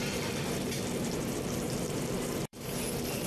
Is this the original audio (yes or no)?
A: no